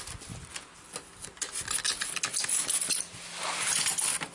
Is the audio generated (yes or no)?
no